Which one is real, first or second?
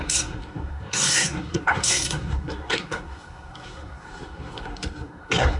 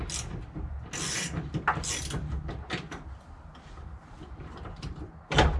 second